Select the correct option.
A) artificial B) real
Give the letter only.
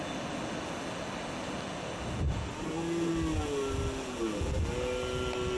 B